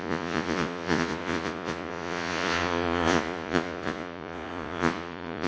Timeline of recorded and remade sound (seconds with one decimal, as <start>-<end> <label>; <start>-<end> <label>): 0.0-5.5 remade